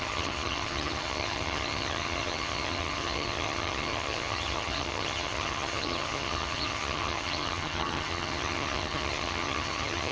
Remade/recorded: remade